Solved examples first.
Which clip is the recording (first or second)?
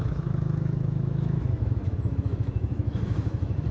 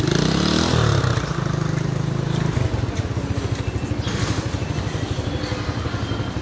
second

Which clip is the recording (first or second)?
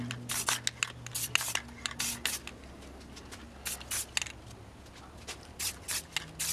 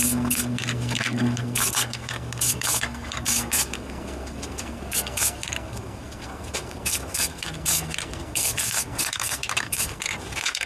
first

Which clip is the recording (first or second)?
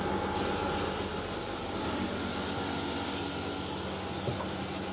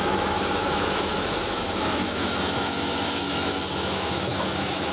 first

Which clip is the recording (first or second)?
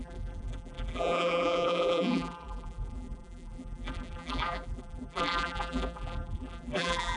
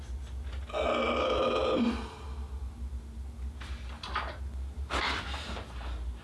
second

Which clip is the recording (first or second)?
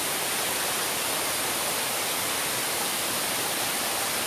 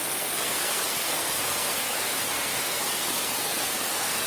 first